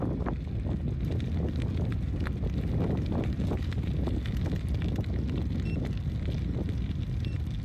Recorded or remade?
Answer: recorded